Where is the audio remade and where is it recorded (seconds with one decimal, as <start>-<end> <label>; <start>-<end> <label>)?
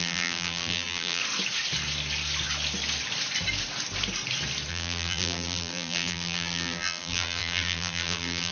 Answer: 0.0-1.2 remade; 1.2-4.7 recorded; 4.7-8.5 remade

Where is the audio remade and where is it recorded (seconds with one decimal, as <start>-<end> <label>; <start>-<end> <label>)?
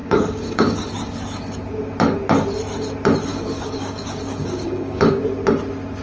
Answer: 0.0-0.9 remade; 0.9-3.3 recorded; 3.3-5.2 remade; 5.2-6.0 recorded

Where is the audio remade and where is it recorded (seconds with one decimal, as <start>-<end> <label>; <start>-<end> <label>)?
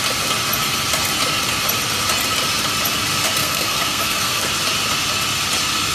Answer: 0.0-3.4 recorded; 3.4-4.5 remade; 4.5-5.9 recorded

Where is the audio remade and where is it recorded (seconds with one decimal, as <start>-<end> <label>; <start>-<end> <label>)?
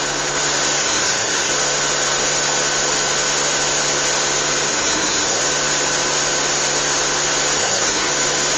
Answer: 0.0-0.8 recorded; 0.8-1.5 remade; 1.5-4.7 recorded; 4.7-5.4 remade; 5.4-7.6 recorded; 7.6-8.1 remade; 8.1-8.6 recorded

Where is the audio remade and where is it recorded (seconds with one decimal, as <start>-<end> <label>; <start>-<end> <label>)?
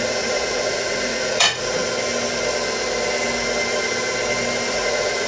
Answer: 0.0-1.8 remade; 1.8-4.7 recorded; 4.7-5.3 remade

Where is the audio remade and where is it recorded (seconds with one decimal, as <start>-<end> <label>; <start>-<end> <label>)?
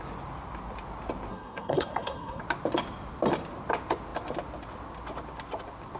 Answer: 0.0-1.3 recorded; 1.3-2.4 remade; 2.4-6.0 recorded